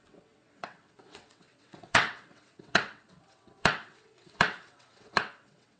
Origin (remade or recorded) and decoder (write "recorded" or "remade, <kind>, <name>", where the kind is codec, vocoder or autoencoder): remade, vocoder, WaveNeXt